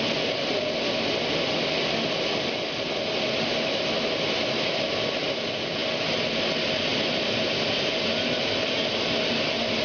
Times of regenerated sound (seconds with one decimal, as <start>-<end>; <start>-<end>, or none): none